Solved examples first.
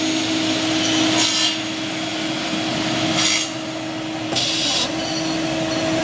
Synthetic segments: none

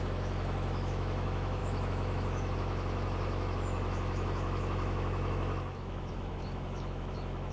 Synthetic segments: 0.0-7.5 (autoencoder, DAC-VAE)

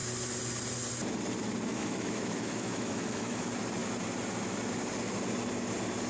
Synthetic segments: 1.7-3.4 (autoencoder, DAC-VAE)